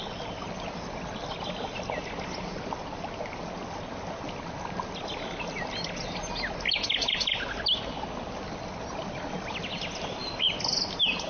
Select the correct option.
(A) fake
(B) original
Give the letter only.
B